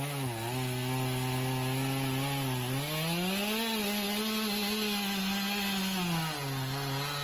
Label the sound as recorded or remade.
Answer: recorded